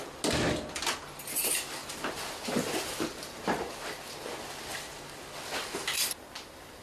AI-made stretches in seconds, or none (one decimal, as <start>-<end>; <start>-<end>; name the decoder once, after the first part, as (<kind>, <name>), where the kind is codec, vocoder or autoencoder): 1.8-3.7 (vocoder, BigVGAN v2)